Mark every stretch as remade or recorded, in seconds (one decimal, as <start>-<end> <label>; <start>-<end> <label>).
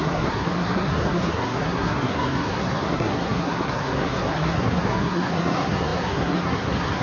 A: 0.0-7.0 remade